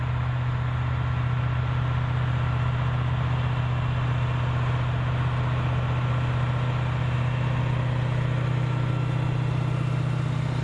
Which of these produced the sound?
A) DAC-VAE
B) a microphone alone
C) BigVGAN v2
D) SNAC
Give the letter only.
B